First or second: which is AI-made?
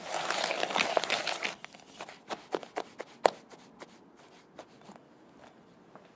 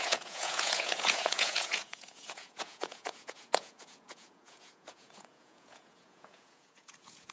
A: second